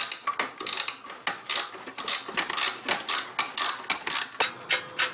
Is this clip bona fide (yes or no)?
yes